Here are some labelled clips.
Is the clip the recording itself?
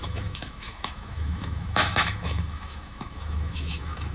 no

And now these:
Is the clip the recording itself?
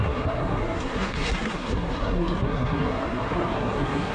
no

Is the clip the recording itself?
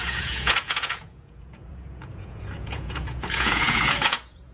no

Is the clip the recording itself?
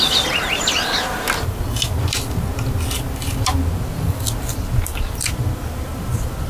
yes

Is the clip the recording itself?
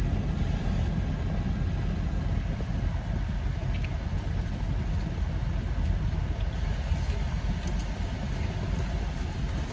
yes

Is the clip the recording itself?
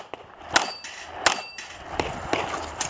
yes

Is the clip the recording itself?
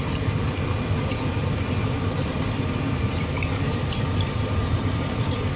no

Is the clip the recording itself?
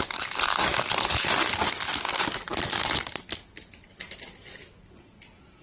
yes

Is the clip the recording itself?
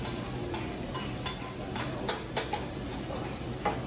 yes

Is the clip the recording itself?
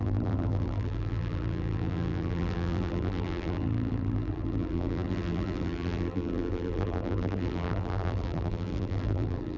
no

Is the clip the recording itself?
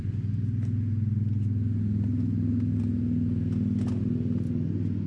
yes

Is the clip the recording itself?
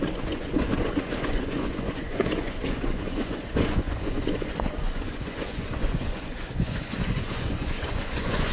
no